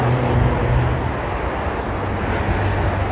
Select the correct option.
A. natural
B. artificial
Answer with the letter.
A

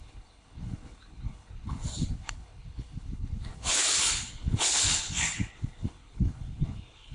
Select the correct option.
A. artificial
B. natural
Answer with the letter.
A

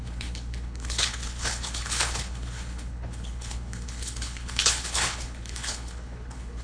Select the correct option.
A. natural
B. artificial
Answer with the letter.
B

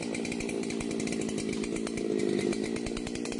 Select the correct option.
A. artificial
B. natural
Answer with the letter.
B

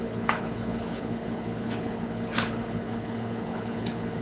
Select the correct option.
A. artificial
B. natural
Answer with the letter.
A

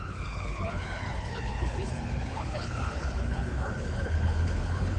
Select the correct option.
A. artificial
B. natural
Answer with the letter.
A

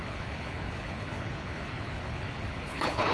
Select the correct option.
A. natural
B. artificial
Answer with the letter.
B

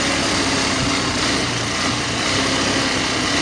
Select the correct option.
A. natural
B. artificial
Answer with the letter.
A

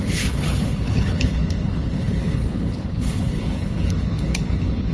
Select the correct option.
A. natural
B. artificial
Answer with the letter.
B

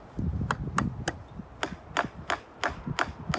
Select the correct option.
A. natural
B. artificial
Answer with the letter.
A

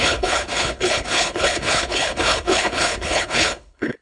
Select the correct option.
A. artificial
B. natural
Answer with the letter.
A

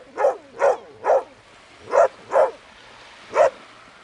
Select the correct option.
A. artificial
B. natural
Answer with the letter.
B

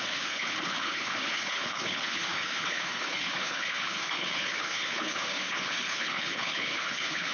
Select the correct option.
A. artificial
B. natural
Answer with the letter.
A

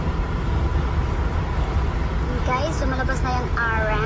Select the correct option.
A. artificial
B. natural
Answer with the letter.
B